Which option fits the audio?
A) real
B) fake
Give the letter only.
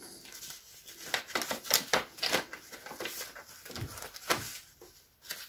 A